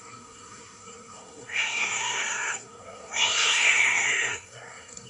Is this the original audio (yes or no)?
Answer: no